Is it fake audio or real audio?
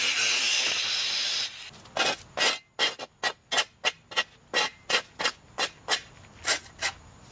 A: real